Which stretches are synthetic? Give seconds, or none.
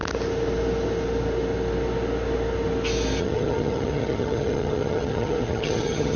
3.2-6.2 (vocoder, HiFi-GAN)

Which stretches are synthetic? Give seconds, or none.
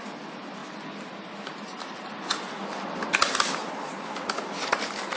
none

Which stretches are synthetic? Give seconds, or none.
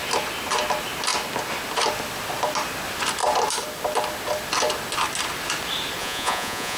6.0-6.8 (vocoder, Vocos)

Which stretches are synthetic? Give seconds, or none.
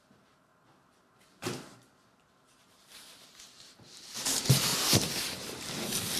0.0-0.5 (vocoder, BigVGAN v2); 2.6-4.7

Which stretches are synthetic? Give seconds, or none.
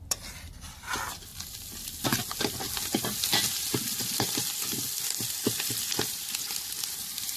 0.0-1.3 (vocoder, BigVGAN v2); 3.6-7.4